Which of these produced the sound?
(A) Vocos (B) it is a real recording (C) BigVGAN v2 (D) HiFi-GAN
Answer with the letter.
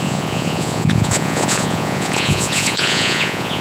A